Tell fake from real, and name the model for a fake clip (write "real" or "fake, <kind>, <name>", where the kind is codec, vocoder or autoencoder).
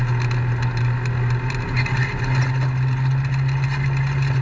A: real